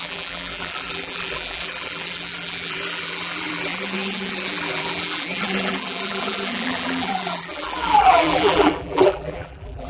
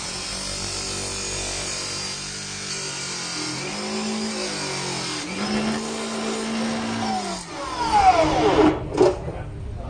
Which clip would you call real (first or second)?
second